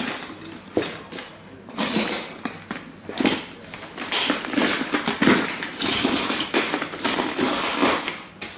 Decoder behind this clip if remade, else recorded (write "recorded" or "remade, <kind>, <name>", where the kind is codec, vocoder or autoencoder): recorded